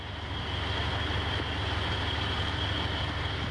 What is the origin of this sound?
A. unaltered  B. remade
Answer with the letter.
A